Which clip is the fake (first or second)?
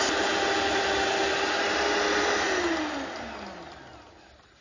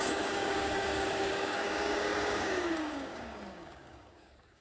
second